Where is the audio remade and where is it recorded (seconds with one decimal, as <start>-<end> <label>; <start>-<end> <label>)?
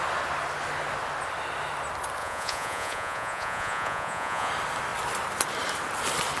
0.0-2.2 recorded; 2.2-4.5 remade; 4.5-6.4 recorded